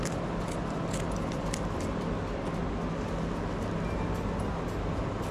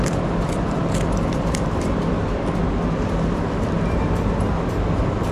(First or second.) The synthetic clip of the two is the second